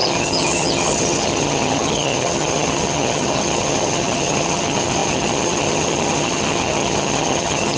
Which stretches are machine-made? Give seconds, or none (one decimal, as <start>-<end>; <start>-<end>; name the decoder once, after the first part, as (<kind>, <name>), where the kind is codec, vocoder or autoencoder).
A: 0.0-7.8 (vocoder, HiFi-GAN)